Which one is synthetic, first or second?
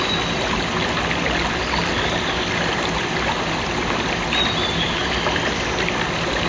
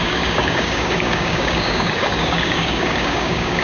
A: second